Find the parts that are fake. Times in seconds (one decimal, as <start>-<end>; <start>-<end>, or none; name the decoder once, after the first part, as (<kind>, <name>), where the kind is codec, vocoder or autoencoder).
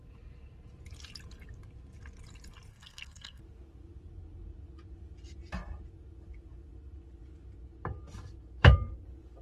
2.7-3.4 (codec, SNAC)